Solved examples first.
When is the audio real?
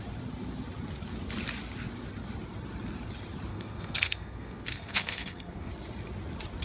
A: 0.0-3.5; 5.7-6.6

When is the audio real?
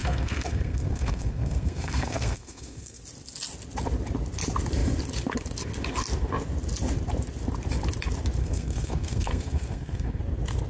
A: 3.0-8.4; 10.2-10.7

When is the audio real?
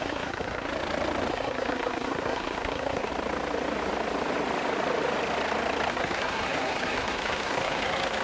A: 0.7-1.3; 3.1-5.9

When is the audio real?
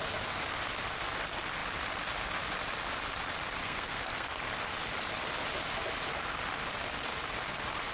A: 0.0-3.6; 4.4-7.9